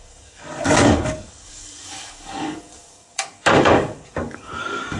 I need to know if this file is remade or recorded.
remade